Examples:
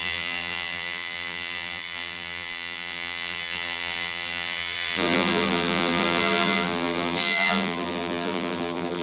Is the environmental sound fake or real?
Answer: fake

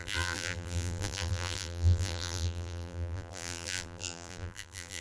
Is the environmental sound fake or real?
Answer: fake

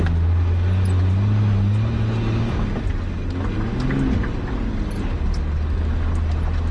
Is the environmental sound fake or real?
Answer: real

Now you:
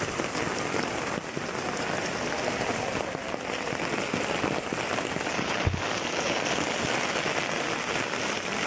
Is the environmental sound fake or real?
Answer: real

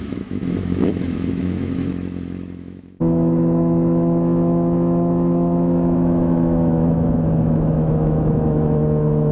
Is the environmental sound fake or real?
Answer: fake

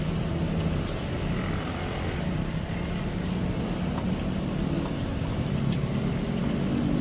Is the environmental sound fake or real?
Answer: real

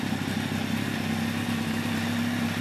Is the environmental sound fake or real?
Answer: real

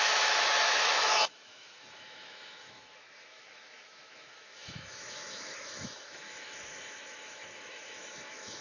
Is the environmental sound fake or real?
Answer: fake